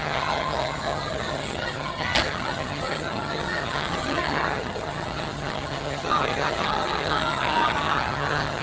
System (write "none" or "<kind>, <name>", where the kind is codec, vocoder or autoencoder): vocoder, HiFi-GAN